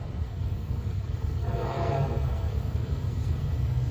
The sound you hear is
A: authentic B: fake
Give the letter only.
B